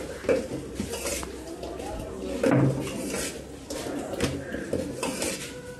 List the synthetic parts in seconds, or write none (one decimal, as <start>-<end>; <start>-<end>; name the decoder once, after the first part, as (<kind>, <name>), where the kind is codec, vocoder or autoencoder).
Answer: none